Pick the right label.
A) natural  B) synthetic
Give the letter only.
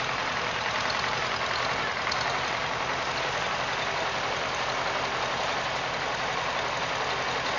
A